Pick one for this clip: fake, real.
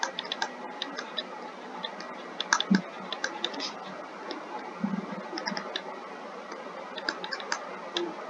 real